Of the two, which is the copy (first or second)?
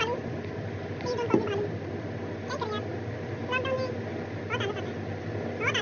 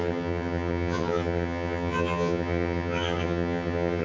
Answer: second